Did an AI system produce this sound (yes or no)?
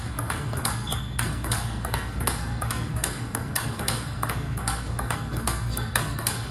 yes